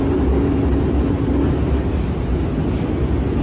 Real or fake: real